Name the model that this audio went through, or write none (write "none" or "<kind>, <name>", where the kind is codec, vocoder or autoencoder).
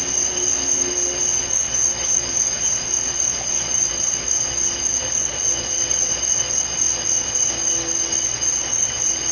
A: none